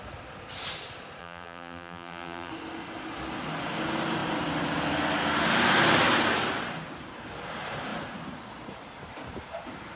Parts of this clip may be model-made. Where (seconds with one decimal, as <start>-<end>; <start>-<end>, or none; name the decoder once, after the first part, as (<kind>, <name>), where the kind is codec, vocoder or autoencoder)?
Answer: 1.2-2.5 (vocoder, BigVGAN v2)